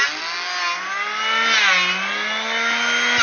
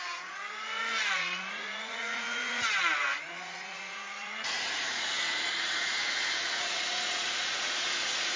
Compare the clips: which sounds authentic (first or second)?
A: first